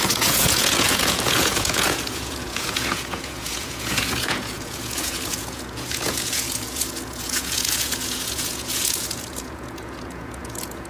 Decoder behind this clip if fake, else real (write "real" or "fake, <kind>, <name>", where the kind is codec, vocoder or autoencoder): fake, vocoder, Vocos